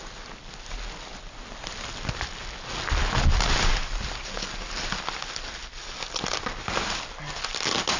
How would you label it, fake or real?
real